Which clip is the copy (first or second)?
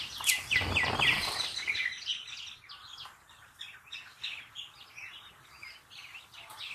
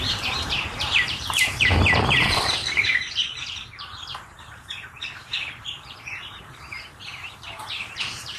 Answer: second